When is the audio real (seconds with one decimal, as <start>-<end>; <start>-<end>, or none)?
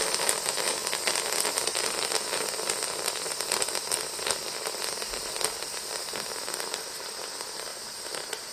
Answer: 0.0-7.7